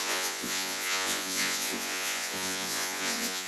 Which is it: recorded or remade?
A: remade